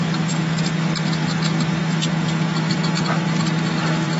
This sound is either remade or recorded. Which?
recorded